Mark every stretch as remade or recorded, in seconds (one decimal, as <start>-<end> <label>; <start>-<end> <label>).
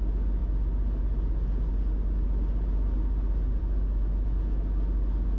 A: 0.0-5.4 recorded